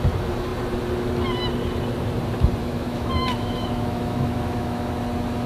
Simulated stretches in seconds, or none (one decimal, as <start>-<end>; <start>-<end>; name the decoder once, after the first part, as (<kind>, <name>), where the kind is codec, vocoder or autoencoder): 2.6-4.9 (autoencoder, DAC-VAE)